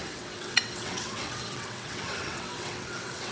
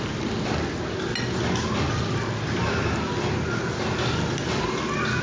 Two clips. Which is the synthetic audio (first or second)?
first